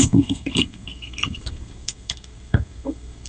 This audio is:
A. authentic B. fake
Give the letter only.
B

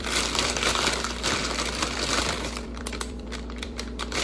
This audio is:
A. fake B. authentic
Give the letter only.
A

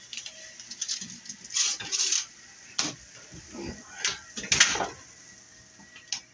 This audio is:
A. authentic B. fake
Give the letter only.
A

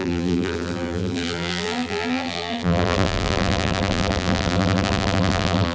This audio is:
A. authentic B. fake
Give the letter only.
B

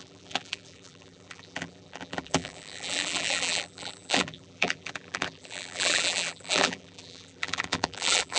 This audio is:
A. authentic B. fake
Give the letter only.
B